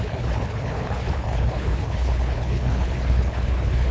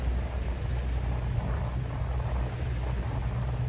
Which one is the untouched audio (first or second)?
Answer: second